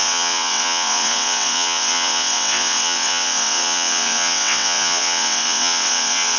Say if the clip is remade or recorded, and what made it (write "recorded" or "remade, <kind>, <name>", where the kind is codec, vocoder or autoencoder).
remade, vocoder, WaveNeXt